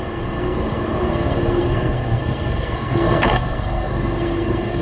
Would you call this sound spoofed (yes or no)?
yes